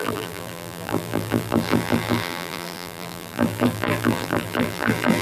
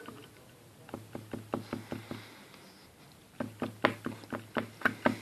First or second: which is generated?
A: first